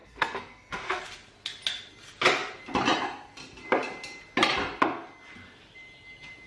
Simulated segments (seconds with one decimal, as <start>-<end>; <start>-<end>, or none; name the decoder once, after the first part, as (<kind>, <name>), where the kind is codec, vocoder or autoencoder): 0.0-1.0 (codec, SNAC)